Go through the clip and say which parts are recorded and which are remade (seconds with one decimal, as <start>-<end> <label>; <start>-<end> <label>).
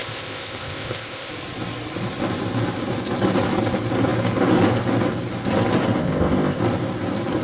0.0-1.3 remade; 1.3-6.0 recorded; 6.0-6.6 remade; 6.6-7.4 recorded